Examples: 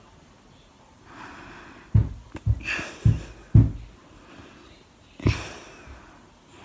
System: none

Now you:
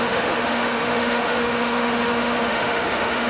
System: autoencoder, DAC-VAE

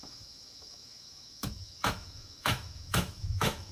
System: autoencoder, DAC-VAE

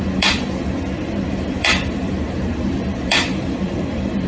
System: vocoder, BigVGAN v2